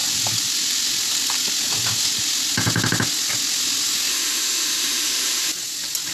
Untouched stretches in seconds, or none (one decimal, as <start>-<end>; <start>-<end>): 0.0-4.1; 5.5-6.1